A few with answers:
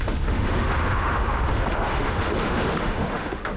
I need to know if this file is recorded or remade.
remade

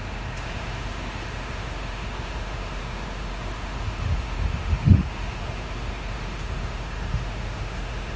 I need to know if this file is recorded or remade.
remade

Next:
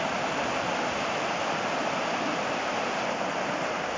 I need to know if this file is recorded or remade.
recorded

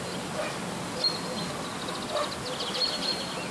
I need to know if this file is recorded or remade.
recorded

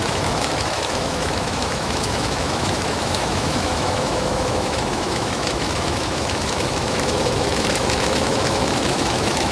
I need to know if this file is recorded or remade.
remade